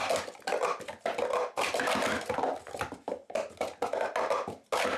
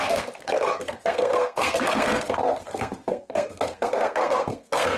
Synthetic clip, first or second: second